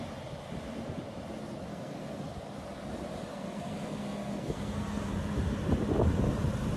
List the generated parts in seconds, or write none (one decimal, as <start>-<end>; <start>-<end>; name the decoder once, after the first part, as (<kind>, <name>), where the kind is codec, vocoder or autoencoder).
1.7-2.2 (codec, SNAC); 3.3-5.1

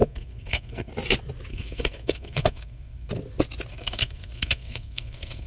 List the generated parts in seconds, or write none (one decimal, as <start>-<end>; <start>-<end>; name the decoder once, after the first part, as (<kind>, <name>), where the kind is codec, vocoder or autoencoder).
0.0-0.9 (codec, SNAC); 1.5-3.1; 3.7-5.5

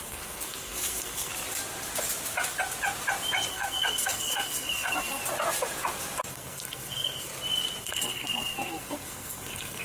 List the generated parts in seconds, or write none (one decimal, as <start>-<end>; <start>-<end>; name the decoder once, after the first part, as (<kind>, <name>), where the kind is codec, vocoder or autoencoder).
0.0-1.3 (codec, SNAC); 3.5-5.2; 6.3-7.3; 7.8-9.8

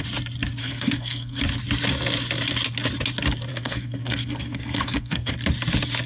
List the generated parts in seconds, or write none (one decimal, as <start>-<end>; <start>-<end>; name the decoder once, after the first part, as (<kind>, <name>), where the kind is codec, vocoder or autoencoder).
0.6-1.4 (codec, SNAC); 3.5-5.3

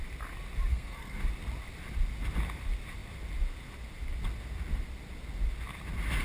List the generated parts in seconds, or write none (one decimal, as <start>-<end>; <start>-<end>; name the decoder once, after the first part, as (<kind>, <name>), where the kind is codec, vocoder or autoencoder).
0.7-1.2 (codec, SNAC)